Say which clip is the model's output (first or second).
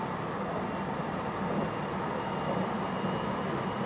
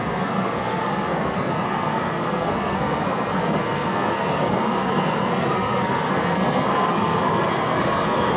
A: second